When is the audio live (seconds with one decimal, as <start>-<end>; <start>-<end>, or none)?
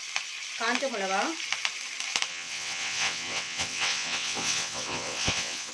0.0-2.3